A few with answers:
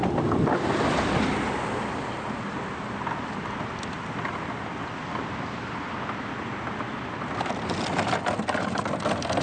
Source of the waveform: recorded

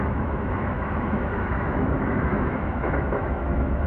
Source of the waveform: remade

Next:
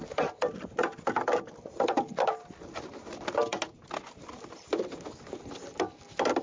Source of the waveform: recorded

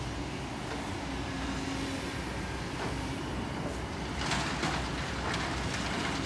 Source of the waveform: recorded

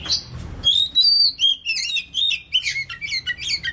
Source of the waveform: recorded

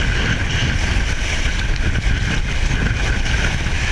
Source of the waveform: recorded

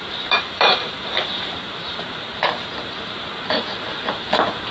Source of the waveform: remade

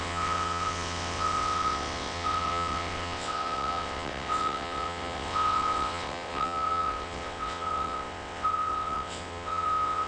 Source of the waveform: remade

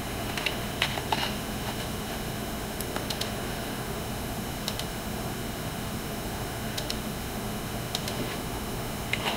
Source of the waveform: remade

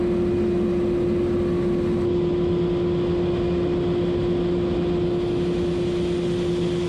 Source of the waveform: recorded